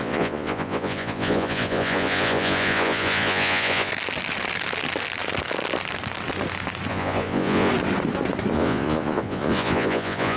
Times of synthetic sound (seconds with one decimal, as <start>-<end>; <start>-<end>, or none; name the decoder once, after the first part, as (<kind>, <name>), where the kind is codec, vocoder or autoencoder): 0.0-3.9 (vocoder, Vocos); 6.9-7.7; 8.5-10.4